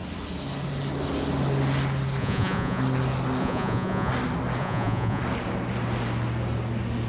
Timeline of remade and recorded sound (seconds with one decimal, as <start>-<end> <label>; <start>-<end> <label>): 0.0-2.2 recorded; 2.2-2.8 remade; 2.8-3.4 recorded; 3.4-4.1 remade; 4.1-4.6 recorded; 4.6-5.2 remade; 5.2-7.1 recorded

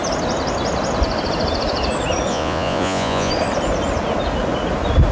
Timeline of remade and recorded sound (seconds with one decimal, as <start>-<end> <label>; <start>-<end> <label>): 0.0-2.3 recorded; 2.3-3.3 remade; 3.3-5.1 recorded

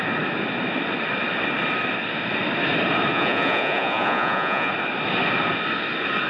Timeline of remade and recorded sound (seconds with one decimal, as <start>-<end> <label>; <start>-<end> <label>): 0.0-3.1 recorded; 3.1-4.7 remade; 4.7-6.3 recorded

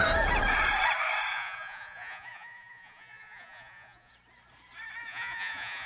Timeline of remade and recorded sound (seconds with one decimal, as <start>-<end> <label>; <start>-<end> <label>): 0.0-1.3 recorded; 1.3-4.1 remade; 4.1-5.0 recorded; 5.0-5.9 remade

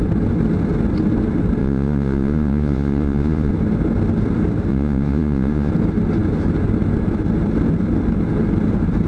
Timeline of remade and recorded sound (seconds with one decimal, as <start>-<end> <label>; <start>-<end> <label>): 0.0-1.6 recorded; 1.6-3.5 remade; 3.5-4.7 recorded; 4.7-5.7 remade; 5.7-9.1 recorded